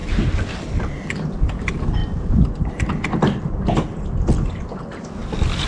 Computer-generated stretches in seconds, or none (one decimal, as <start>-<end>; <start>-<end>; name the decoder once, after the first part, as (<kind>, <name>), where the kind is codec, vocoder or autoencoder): none